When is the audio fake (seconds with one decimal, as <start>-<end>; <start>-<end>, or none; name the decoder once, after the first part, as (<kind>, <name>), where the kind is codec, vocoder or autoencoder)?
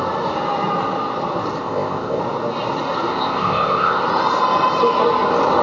1.6-2.2 (codec, ZipCodec); 3.1-4.0